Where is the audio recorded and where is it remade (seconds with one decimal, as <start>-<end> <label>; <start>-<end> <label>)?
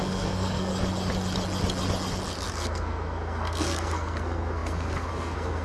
0.0-0.7 remade; 0.7-2.5 recorded; 2.5-5.6 remade